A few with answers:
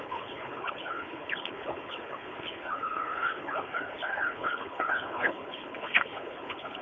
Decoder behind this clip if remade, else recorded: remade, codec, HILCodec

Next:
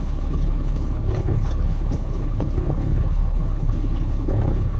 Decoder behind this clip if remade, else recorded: remade, codec, HILCodec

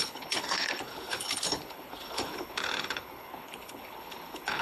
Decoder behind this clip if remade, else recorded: remade, codec, HILCodec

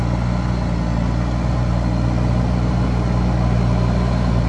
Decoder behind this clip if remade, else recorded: recorded